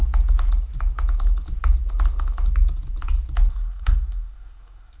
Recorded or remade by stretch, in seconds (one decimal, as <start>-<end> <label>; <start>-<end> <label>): 0.0-3.5 recorded; 3.5-5.0 remade